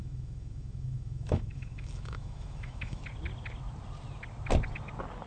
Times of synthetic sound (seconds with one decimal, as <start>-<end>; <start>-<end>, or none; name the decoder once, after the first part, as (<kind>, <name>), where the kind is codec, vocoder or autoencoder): 0.0-3.0 (autoencoder, DAC-VAE)